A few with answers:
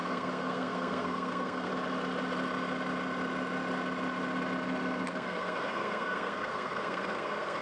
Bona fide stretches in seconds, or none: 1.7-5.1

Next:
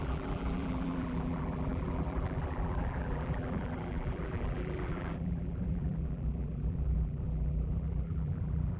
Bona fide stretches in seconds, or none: none

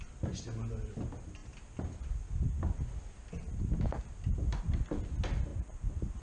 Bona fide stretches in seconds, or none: 0.0-5.5

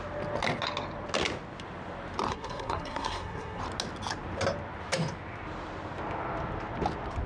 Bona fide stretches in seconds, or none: 0.0-2.3; 3.6-7.3

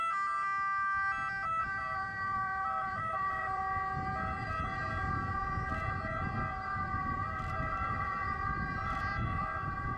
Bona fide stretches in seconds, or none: 0.0-1.6; 3.6-7.0; 9.0-10.0

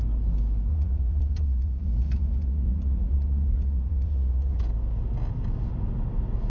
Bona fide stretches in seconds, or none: 0.0-0.7; 4.6-6.5

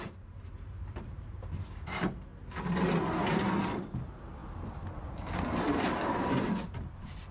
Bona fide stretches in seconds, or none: 2.3-3.8